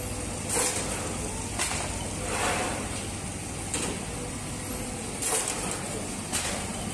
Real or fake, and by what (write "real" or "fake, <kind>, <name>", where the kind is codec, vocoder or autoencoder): real